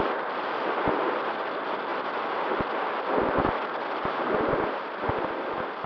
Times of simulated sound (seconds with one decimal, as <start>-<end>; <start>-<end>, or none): none